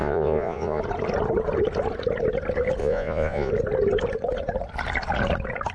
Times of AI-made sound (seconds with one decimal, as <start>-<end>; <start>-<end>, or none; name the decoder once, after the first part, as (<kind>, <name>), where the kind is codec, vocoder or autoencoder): 0.0-0.8 (vocoder, Vocos); 2.8-3.5

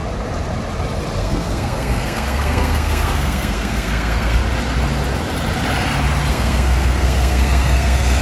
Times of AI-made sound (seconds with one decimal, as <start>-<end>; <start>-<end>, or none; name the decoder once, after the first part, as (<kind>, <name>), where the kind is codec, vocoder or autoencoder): 1.2-4.4 (codec, SNAC); 6.3-8.2

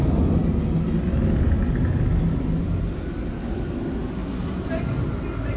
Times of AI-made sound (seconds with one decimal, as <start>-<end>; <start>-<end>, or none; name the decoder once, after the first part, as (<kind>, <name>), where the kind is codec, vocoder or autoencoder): 4.2-4.8 (vocoder, BigVGAN v2)

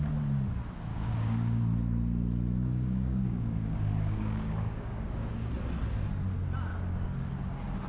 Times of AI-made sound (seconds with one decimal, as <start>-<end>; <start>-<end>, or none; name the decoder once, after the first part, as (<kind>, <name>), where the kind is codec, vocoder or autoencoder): 0.9-1.6 (codec, DAC); 2.6-5.5; 6.7-7.3